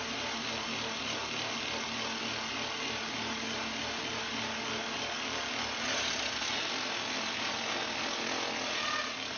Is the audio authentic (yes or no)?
yes